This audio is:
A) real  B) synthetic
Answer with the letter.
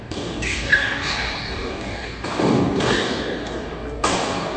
B